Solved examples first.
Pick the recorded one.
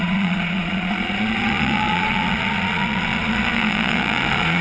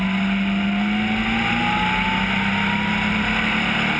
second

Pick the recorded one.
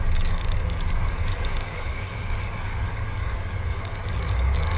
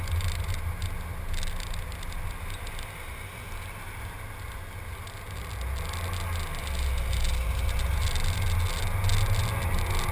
second